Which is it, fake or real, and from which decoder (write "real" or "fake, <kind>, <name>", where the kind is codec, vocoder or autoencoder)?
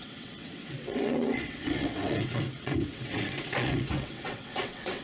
fake, vocoder, WaveNeXt